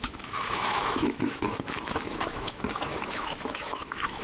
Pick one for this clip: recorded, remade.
remade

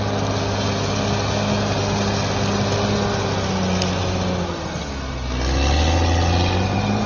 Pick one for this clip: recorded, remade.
recorded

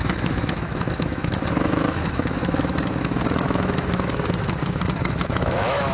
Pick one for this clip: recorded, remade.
remade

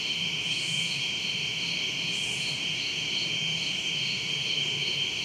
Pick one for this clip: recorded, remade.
remade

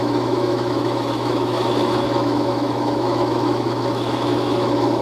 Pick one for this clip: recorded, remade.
remade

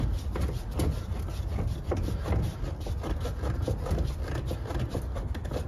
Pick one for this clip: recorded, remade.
recorded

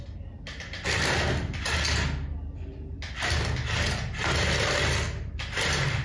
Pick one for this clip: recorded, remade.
recorded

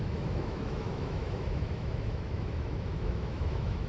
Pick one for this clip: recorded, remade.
remade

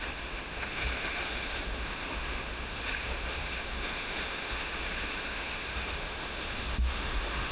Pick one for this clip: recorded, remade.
remade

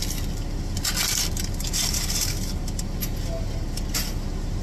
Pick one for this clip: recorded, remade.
recorded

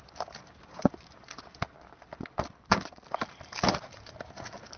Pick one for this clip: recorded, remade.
recorded